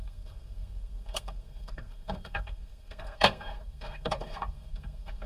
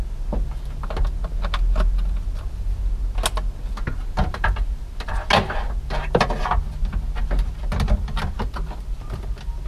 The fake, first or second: first